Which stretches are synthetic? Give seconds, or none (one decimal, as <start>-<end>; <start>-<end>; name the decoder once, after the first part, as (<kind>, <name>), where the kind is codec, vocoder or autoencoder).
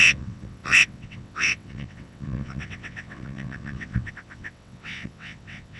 0.0-5.8 (vocoder, WaveNeXt)